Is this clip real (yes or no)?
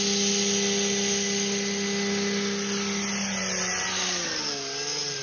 yes